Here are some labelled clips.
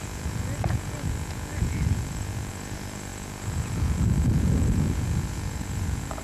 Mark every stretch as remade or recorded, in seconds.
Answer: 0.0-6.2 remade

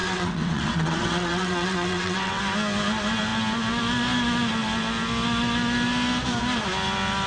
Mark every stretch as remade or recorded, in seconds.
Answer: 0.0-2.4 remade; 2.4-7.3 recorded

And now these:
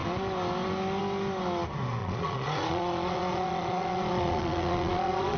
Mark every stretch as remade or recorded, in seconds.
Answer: 0.0-2.0 recorded; 2.0-5.4 remade